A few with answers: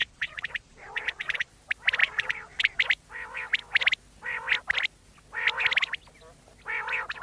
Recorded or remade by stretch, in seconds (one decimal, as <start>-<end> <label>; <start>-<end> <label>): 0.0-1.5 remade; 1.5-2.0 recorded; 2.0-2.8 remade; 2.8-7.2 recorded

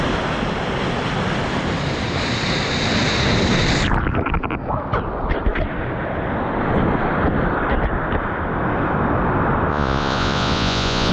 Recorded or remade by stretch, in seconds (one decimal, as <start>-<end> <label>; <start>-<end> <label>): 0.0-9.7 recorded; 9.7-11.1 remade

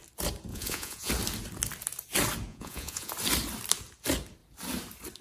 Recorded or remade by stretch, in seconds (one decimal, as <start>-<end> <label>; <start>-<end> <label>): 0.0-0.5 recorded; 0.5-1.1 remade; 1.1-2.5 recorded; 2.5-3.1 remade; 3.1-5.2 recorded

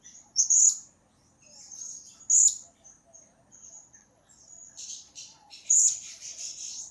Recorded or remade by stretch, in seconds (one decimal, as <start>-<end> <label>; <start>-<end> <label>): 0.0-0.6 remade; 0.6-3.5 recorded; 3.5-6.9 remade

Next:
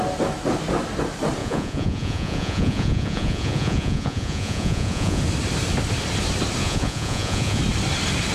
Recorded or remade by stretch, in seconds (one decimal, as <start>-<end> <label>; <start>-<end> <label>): 0.0-1.4 recorded; 1.4-5.2 remade; 5.2-6.6 recorded; 6.6-7.6 remade; 7.6-8.3 recorded

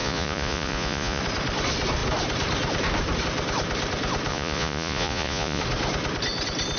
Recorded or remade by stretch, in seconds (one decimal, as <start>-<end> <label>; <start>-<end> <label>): 0.0-1.2 remade; 1.2-4.3 recorded; 4.3-5.6 remade; 5.6-6.8 recorded

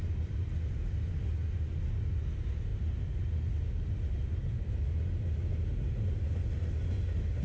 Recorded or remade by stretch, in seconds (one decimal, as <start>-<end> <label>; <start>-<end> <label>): 0.0-7.4 recorded